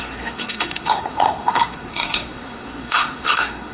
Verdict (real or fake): fake